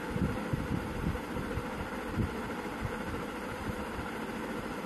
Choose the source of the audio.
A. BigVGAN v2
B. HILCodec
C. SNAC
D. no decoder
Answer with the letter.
D